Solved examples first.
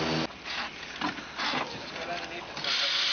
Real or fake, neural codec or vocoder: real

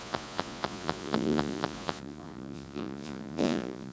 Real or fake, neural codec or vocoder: fake, vocoder, Vocos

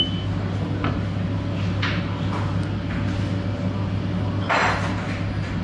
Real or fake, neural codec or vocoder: real